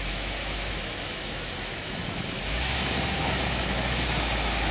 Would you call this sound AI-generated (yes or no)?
yes